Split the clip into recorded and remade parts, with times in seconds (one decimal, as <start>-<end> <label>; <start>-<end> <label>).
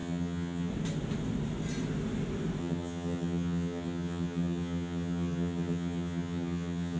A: 0.0-0.7 remade; 0.7-2.6 recorded; 2.6-7.0 remade